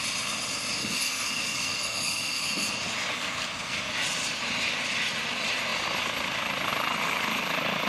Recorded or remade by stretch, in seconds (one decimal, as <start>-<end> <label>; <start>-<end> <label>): 0.0-0.8 recorded; 0.8-2.7 remade; 2.7-3.1 recorded; 3.1-3.9 remade; 3.9-7.9 recorded